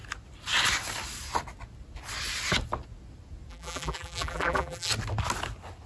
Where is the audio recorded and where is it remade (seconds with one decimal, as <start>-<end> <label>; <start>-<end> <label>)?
0.0-3.5 recorded; 3.5-4.9 remade; 4.9-5.9 recorded